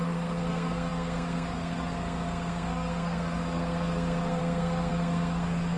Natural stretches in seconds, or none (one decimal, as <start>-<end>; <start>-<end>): none